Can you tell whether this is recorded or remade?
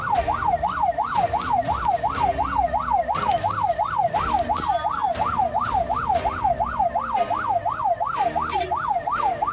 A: recorded